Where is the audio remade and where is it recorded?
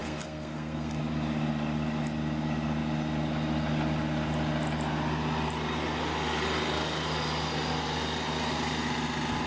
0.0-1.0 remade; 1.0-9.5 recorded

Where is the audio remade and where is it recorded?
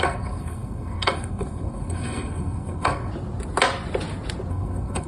0.0-3.1 remade; 3.1-4.5 recorded; 4.5-5.1 remade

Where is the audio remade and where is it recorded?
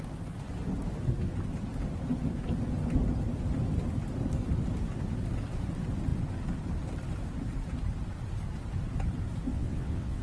0.0-9.5 recorded; 9.5-10.2 remade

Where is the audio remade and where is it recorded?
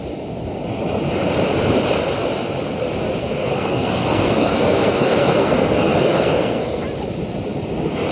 0.0-3.2 recorded; 3.2-6.8 remade; 6.8-8.1 recorded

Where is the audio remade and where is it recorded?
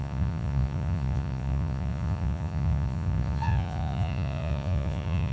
0.0-5.3 remade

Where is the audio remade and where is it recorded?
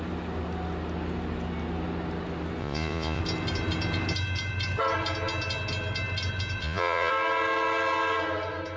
0.0-2.6 recorded; 2.6-3.2 remade; 3.2-6.6 recorded; 6.6-7.1 remade; 7.1-8.8 recorded